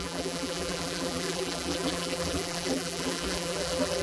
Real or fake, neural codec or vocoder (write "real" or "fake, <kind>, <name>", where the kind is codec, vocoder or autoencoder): fake, vocoder, BigVGAN v2